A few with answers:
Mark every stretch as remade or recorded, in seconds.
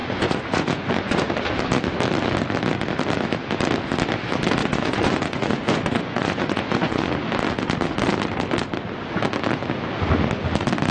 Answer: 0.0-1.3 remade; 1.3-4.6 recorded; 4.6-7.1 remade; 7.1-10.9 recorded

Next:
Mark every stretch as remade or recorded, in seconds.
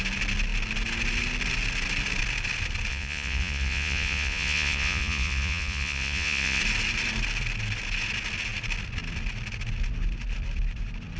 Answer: 0.0-2.9 recorded; 2.9-6.6 remade; 6.6-11.2 recorded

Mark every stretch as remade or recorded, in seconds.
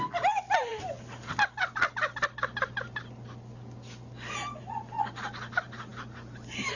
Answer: 0.0-6.8 recorded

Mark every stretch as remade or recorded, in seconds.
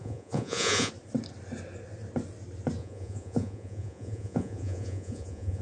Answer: 0.0-0.9 remade; 0.9-2.8 recorded; 2.8-5.6 remade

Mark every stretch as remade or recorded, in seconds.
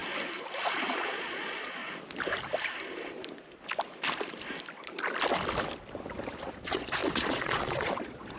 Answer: 0.0-0.6 recorded; 0.6-1.8 remade; 1.8-6.5 recorded; 6.5-8.4 remade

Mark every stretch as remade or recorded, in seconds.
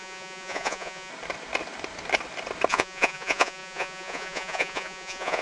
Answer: 0.0-1.1 remade; 1.1-2.7 recorded; 2.7-5.4 remade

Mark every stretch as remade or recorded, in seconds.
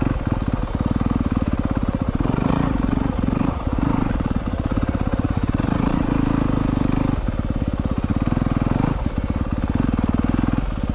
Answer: 0.0-1.8 recorded; 1.8-6.1 remade; 6.1-10.9 recorded